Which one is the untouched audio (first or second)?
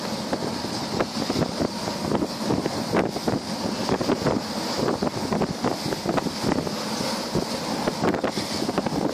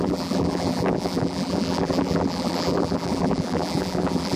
first